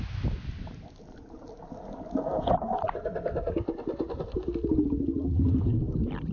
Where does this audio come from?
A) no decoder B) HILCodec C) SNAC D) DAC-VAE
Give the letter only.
A